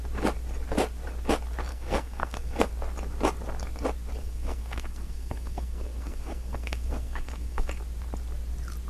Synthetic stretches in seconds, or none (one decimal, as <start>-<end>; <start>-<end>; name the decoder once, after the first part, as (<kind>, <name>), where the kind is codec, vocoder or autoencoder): 1.7-2.7 (codec, SNAC); 4.2-7.8

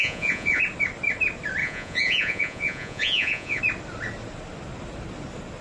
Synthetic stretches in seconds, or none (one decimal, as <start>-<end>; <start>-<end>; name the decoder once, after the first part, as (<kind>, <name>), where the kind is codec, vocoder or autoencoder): 0.0-0.6 (vocoder, Vocos); 1.6-3.6

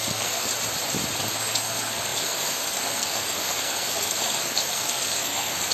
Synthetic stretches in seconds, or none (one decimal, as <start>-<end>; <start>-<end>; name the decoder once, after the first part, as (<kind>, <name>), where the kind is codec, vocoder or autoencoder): 0.0-0.5 (codec, SNAC); 1.3-5.7

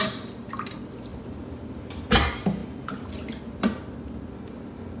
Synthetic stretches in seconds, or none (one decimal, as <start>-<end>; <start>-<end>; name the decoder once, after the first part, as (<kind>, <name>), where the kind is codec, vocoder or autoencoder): 1.1-1.8 (vocoder, BigVGAN v2)

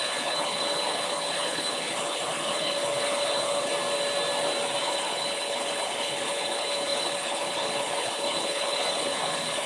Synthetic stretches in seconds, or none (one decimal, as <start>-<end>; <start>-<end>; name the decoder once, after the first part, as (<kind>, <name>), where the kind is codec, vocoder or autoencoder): 0.0-3.7 (codec, HILCodec); 4.8-9.7

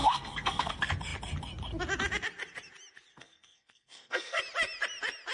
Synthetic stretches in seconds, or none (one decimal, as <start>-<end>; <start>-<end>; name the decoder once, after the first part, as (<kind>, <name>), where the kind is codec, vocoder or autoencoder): 0.0-0.7 (codec, SNAC); 3.1-4.4